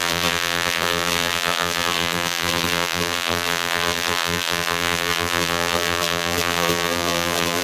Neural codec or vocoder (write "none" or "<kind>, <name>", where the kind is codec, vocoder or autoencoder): vocoder, BigVGAN v2